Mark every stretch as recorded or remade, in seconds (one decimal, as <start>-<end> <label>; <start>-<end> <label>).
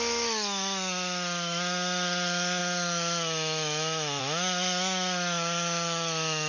0.0-6.5 remade